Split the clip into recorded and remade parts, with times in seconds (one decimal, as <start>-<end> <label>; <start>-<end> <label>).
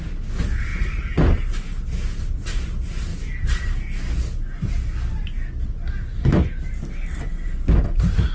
0.0-8.3 recorded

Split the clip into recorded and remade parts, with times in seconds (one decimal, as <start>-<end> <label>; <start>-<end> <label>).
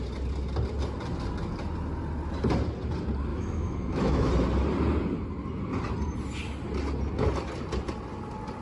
0.0-3.3 recorded; 3.3-4.3 remade; 4.3-8.6 recorded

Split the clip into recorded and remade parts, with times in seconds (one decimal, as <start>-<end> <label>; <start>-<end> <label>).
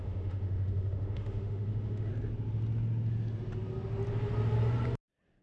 0.0-2.1 remade; 2.1-5.4 recorded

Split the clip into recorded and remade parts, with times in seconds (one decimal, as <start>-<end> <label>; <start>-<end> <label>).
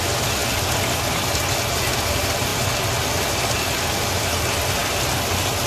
0.0-5.7 recorded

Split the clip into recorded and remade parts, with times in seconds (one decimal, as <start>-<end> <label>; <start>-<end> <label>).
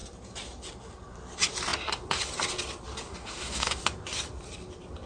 0.0-3.1 recorded; 3.1-3.8 remade; 3.8-5.1 recorded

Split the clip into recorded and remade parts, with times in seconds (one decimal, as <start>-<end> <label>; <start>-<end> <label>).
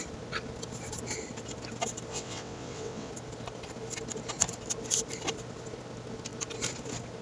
0.0-2.1 recorded; 2.1-3.1 remade; 3.1-7.2 recorded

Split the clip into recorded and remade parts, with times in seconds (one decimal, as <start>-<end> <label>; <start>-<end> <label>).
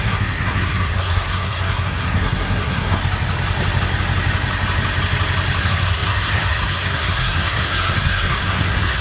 0.0-3.0 remade; 3.0-5.6 recorded; 5.6-9.0 remade